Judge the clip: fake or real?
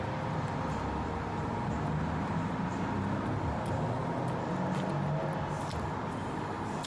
real